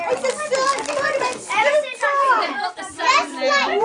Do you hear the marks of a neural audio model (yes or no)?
yes